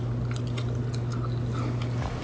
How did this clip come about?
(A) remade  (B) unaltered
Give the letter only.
B